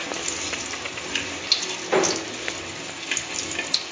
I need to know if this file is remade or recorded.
recorded